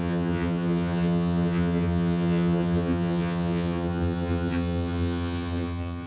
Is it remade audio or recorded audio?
remade